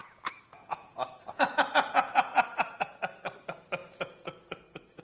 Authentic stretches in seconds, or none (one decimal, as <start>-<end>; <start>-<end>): 3.0-3.8